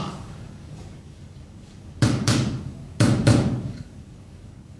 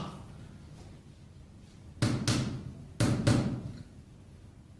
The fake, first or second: first